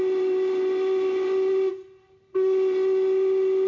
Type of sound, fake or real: real